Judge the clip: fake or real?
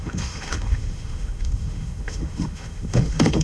fake